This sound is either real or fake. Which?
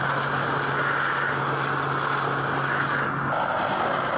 real